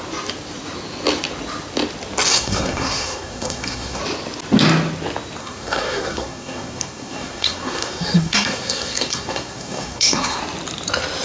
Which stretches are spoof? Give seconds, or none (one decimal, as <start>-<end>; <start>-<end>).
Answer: 2.3-4.0; 5.4-10.4